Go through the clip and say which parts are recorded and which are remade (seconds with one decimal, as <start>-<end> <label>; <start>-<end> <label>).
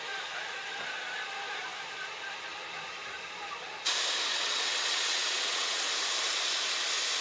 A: 0.0-4.3 recorded; 4.3-5.8 remade; 5.8-7.2 recorded